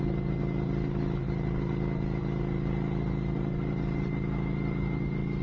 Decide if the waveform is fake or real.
real